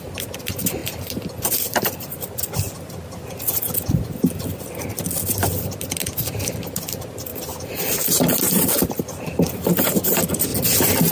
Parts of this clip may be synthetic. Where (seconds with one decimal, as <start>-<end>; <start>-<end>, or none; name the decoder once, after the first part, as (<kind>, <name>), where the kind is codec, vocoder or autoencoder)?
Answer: 0.8-2.4 (vocoder, BigVGAN v2); 7.3-9.7; 10.5-11.1